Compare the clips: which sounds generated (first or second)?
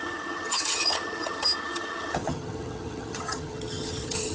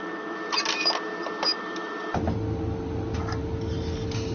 first